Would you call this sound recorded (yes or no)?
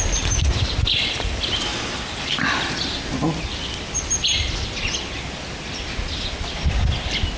yes